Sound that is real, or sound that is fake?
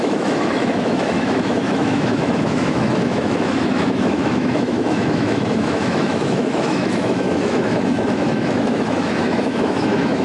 fake